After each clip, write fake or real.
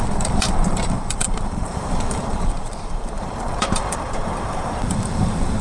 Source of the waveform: fake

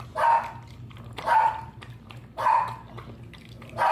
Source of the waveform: real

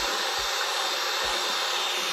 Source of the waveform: real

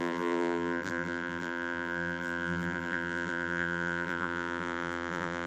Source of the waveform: fake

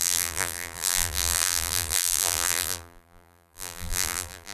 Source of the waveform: fake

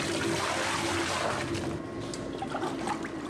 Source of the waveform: real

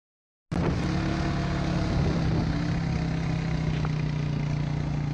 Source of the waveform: real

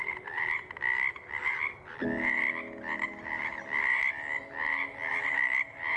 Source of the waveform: real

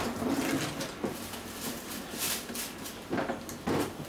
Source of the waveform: real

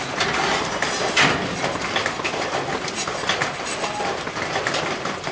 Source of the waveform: fake